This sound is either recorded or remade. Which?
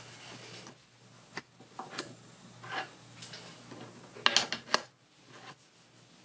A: recorded